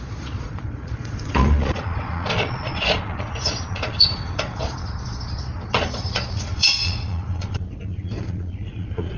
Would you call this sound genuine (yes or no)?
no